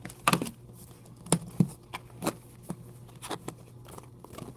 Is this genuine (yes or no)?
yes